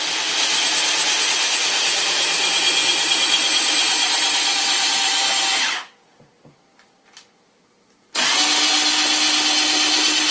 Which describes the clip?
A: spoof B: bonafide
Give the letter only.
B